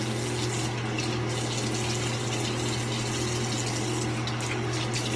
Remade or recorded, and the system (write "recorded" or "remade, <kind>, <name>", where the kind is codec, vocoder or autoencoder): recorded